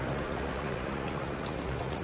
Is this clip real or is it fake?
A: fake